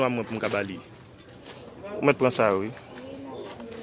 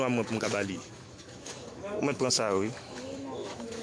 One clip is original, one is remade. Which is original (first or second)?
first